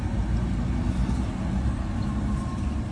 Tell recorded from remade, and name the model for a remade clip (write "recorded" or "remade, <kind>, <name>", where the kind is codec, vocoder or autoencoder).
recorded